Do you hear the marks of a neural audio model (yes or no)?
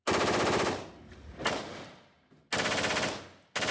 no